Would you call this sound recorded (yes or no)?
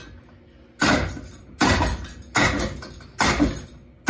yes